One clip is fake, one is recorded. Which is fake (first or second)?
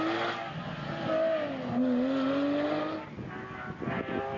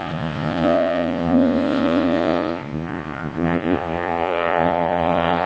second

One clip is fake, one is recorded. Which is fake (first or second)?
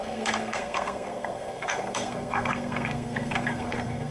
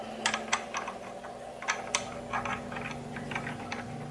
first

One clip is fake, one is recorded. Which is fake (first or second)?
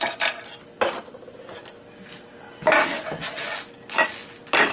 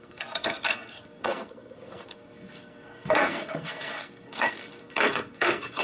second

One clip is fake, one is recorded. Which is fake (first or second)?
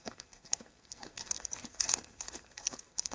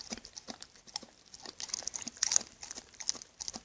first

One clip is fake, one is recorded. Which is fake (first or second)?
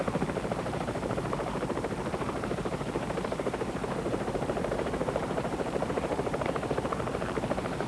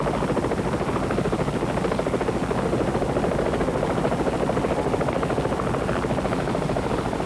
first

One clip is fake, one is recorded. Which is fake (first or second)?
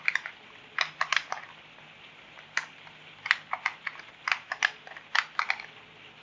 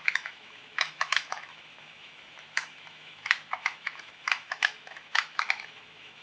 second